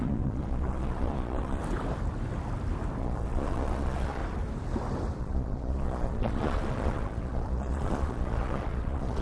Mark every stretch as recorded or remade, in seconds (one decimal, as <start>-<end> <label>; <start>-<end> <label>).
0.0-1.6 remade; 1.6-3.0 recorded; 3.0-4.2 remade; 4.2-5.2 recorded; 5.2-9.2 remade